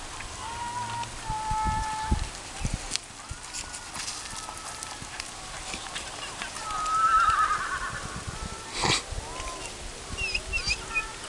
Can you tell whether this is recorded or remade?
recorded